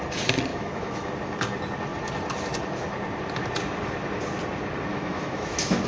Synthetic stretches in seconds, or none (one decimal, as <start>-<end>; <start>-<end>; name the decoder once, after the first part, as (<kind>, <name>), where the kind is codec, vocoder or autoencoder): 0.5-1.1 (autoencoder, DAC-VAE); 4.9-5.9